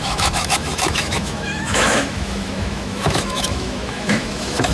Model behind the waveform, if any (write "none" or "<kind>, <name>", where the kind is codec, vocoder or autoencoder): autoencoder, DAC-VAE